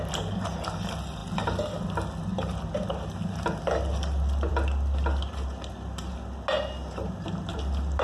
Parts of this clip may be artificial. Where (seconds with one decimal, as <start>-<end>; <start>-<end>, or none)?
none

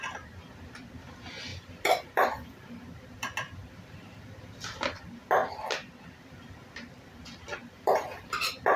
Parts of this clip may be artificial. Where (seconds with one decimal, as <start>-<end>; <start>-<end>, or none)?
1.5-3.2; 3.6-5.0; 7.6-8.8

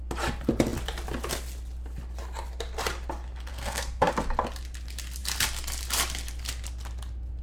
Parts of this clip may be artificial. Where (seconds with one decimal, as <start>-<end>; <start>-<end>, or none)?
3.5-4.1